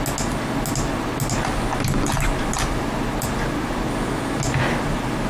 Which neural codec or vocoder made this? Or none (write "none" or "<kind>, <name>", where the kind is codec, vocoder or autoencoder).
none